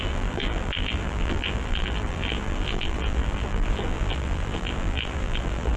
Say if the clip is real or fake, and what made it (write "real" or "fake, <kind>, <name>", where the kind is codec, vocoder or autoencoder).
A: fake, vocoder, BigVGAN v2